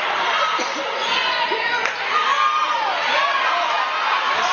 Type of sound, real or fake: real